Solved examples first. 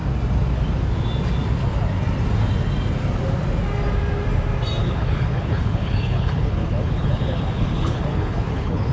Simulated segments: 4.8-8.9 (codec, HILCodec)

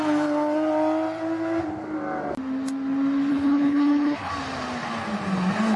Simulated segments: 3.3-4.3 (codec, HILCodec)

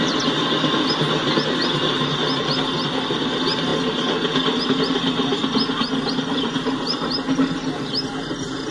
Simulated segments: none

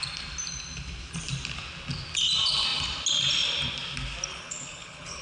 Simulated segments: 4.3-5.2 (codec, HILCodec)